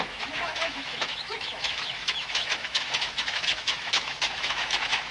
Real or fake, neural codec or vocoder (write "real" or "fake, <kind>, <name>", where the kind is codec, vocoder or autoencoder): fake, autoencoder, DAC-VAE